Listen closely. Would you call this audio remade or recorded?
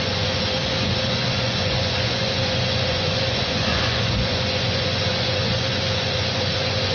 remade